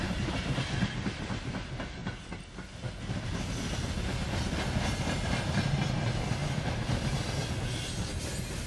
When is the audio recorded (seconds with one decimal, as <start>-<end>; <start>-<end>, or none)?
0.0-8.7